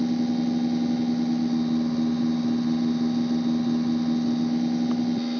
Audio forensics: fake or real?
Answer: real